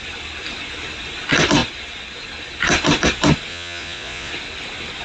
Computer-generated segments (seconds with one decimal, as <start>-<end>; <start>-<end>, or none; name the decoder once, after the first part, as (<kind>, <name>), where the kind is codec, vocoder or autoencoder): 3.5-4.3 (vocoder, Vocos)

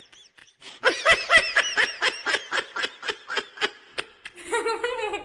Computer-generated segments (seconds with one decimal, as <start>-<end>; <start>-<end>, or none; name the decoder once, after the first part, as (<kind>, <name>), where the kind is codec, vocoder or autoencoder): 3.9-4.5 (codec, HILCodec)

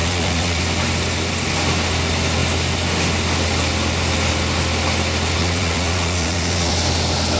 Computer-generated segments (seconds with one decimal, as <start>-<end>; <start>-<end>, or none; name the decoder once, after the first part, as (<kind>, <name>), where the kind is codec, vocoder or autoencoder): 0.0-0.6 (vocoder, Vocos); 5.4-6.7

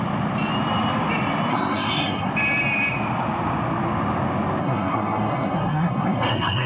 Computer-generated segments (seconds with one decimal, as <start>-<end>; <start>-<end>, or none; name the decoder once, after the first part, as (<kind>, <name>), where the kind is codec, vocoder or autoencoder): 1.5-2.3 (codec, SNAC); 4.6-6.7

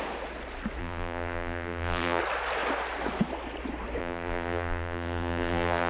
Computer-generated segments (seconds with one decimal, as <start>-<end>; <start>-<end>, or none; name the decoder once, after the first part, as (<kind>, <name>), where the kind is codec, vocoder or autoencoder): 0.8-2.2 (vocoder, BigVGAN v2); 4.0-5.9

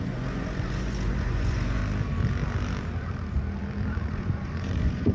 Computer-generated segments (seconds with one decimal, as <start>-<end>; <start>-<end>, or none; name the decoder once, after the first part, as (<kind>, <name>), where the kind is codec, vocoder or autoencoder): 0.0-1.8 (vocoder, Vocos); 4.0-5.1

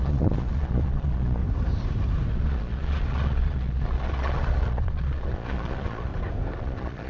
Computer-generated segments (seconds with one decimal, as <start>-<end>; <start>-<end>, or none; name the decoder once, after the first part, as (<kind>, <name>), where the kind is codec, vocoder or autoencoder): 0.0-1.4 (vocoder, Vocos); 2.3-6.1; 6.6-7.1

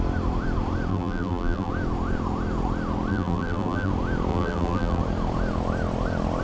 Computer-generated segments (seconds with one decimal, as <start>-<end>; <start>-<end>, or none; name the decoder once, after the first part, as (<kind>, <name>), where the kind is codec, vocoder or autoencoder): 0.9-1.7 (vocoder, BigVGAN v2); 3.1-3.9; 4.3-5.0